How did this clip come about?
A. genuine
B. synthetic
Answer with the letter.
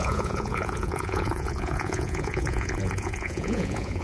B